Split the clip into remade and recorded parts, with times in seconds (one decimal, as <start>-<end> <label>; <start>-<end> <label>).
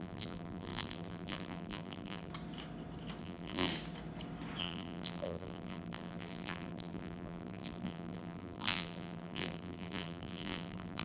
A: 0.0-2.3 remade; 2.3-3.2 recorded; 3.2-3.7 remade; 3.7-4.6 recorded; 4.6-11.0 remade